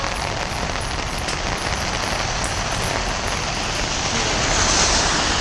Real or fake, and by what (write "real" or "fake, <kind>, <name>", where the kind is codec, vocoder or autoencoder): real